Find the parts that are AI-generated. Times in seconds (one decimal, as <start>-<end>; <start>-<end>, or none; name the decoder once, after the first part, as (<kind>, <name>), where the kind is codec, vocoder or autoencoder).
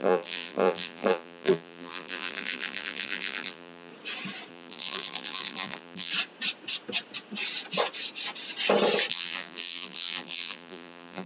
0.0-3.9 (vocoder, BigVGAN v2); 4.5-6.1; 9.1-11.3